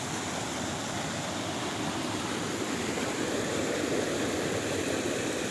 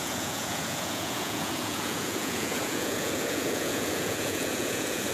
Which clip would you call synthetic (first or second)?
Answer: second